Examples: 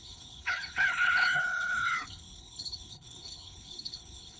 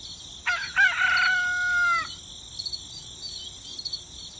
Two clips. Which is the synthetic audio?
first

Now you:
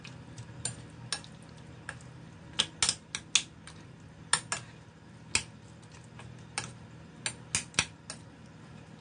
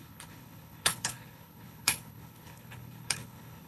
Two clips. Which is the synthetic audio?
second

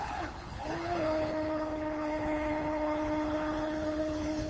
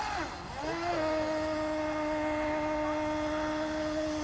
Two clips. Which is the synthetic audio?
first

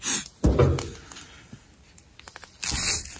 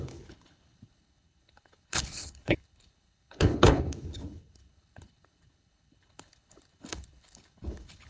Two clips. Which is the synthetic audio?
second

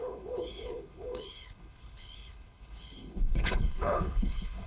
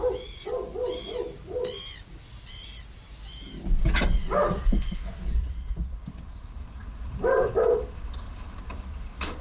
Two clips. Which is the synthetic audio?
first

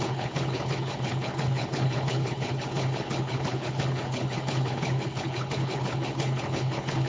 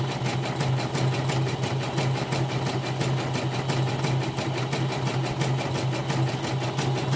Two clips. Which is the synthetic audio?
first